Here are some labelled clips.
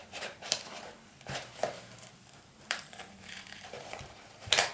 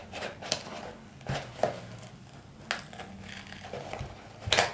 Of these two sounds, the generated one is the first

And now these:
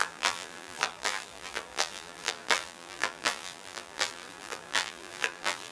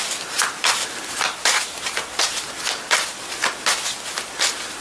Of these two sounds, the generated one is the first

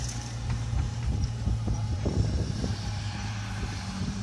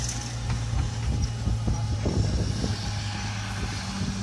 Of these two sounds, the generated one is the first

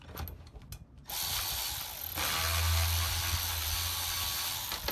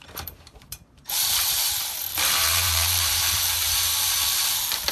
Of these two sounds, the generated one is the second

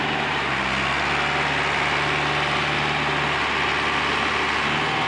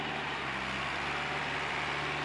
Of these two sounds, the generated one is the second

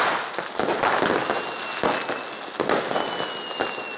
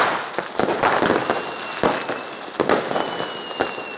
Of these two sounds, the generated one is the second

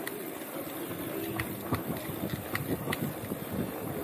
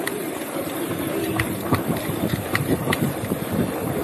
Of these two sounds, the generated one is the second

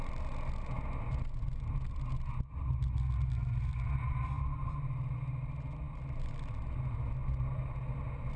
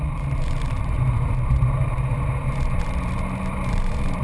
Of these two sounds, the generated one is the second